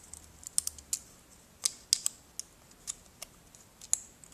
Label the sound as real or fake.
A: real